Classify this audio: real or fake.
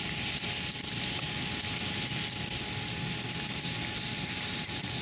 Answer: real